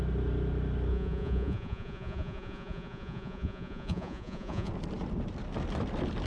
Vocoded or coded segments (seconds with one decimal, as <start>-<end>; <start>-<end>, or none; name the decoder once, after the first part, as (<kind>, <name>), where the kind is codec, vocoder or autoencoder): 0.9-4.7 (vocoder, Vocos)